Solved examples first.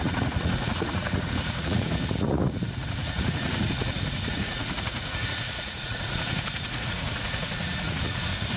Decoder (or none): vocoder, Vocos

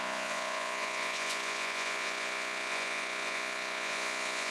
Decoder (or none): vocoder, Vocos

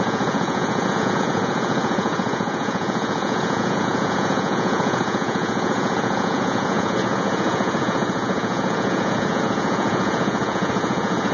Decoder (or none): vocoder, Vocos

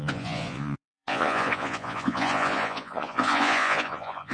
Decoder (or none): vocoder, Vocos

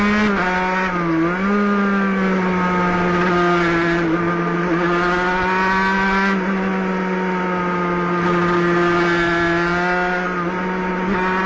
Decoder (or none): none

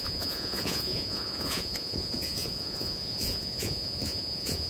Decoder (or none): vocoder, Vocos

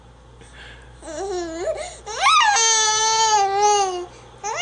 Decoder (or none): none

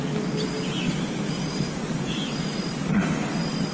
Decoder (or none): none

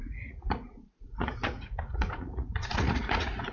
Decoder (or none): vocoder, Vocos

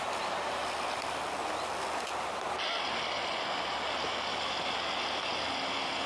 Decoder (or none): none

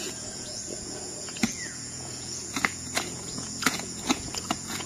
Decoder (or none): vocoder, Vocos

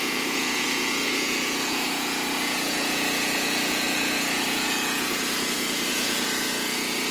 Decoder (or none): vocoder, Vocos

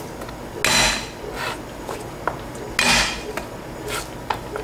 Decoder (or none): none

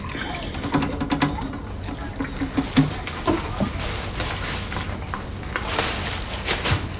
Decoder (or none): none